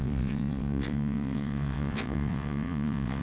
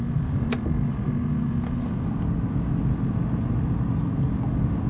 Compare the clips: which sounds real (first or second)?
second